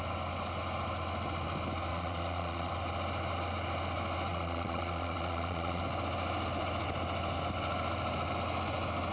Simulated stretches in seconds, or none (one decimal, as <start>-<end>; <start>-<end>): 1.9-2.7; 4.3-5.8